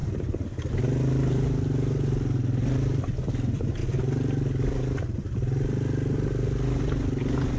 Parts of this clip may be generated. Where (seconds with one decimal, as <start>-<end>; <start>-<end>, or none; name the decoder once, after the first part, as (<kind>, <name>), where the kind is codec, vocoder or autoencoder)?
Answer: none